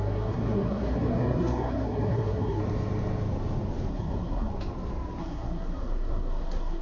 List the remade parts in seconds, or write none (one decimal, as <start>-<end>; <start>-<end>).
0.0-2.6; 3.9-4.5; 5.2-6.8